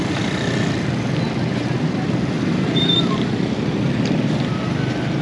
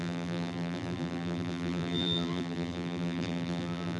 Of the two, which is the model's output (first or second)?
second